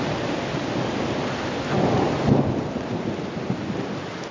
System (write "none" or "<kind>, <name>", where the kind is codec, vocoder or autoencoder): none